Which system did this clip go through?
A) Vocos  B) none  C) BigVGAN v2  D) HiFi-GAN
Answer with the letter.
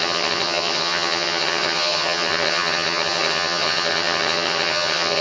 D